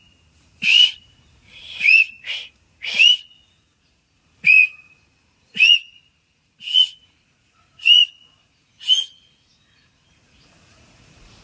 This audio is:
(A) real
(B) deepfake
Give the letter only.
B